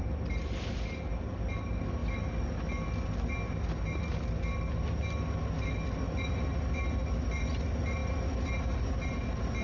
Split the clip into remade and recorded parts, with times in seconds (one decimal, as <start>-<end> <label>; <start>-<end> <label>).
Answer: 0.0-9.6 recorded